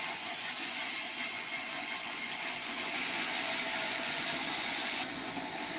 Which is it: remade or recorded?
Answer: remade